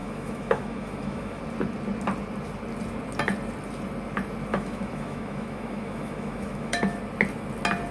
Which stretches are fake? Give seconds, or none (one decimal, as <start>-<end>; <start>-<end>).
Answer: 0.0-1.4; 4.5-7.0

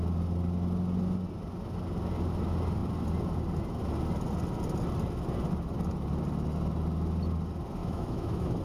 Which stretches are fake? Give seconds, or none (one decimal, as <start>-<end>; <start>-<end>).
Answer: 7.8-8.6

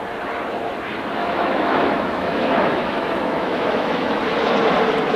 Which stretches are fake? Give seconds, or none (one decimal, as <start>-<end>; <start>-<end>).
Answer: 1.2-4.2